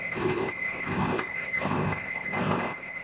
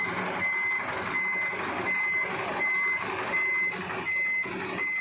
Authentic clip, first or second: second